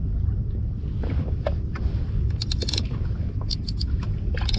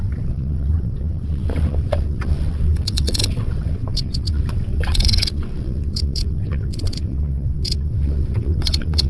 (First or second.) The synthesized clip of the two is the second